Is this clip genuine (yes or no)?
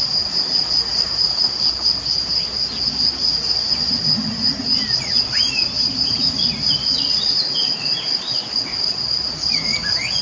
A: yes